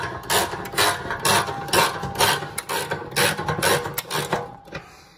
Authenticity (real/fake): real